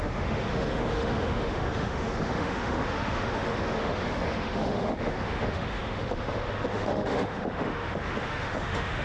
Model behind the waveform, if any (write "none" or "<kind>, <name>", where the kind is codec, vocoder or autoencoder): autoencoder, DAC-VAE